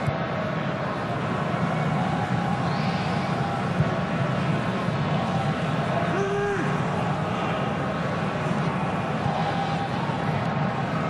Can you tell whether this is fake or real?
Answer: real